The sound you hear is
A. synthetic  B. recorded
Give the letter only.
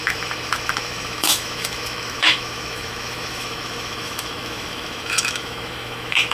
A